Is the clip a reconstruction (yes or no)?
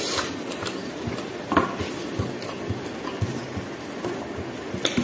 no